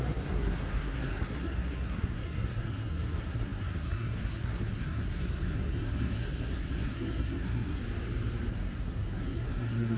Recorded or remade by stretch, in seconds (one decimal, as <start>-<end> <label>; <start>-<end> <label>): 0.0-7.8 remade; 7.8-8.5 recorded; 8.5-10.0 remade